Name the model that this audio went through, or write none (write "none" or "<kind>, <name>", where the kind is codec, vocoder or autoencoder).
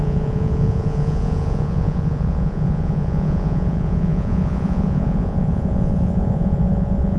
vocoder, Vocos